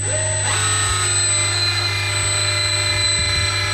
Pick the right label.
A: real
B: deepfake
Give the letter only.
A